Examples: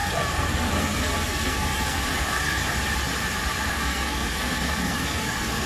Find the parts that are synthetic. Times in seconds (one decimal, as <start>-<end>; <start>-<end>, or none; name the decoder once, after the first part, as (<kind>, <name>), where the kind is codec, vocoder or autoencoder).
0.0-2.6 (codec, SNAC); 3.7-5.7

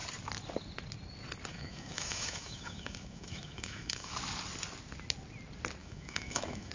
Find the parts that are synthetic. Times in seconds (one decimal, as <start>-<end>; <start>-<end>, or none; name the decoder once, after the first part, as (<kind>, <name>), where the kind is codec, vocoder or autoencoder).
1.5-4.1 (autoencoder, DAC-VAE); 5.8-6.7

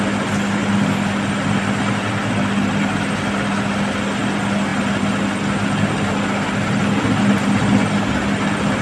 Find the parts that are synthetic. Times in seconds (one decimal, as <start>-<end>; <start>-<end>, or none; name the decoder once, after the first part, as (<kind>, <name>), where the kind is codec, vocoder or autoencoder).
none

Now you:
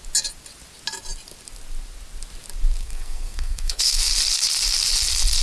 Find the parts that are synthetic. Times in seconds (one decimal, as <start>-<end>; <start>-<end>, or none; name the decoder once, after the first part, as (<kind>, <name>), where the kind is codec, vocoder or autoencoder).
2.8-4.1 (codec, SNAC)